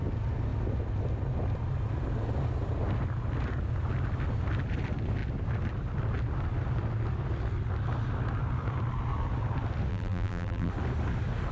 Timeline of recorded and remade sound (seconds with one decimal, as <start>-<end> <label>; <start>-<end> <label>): 0.0-9.9 recorded; 9.9-10.7 remade; 10.7-11.5 recorded